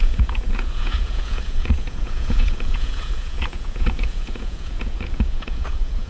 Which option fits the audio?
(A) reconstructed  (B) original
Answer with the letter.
A